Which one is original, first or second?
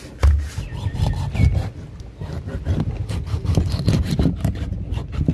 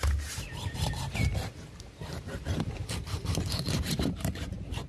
first